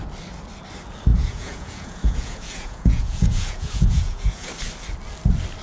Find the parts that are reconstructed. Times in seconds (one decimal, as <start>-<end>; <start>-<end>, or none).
1.1-4.5